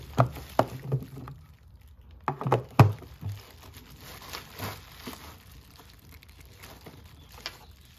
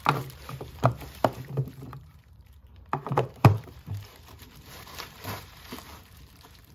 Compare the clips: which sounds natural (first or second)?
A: first